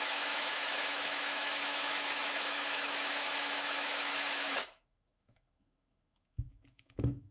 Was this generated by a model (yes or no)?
yes